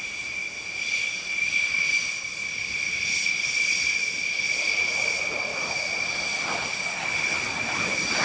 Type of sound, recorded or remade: remade